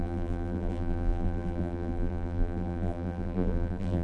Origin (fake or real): fake